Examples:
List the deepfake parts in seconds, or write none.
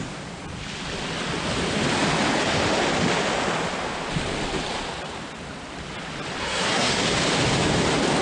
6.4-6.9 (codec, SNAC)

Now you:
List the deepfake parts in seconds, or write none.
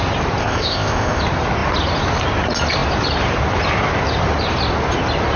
0.4-1.2 (codec, ZipCodec)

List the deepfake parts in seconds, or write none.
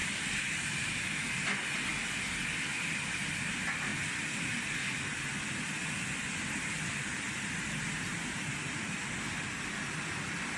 0.0-1.1 (vocoder, BigVGAN v2); 3.9-9.0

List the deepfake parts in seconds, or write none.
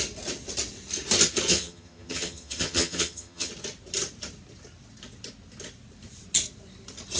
1.5-3.5 (vocoder, HiFi-GAN)